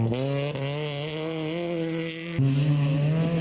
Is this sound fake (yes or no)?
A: no